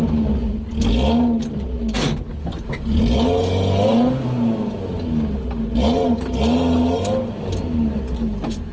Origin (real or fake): real